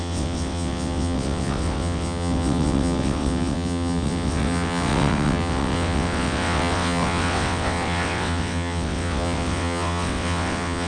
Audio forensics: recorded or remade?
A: remade